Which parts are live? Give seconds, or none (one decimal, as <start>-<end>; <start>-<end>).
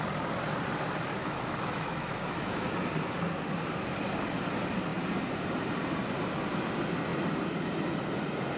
0.0-1.2; 2.7-8.6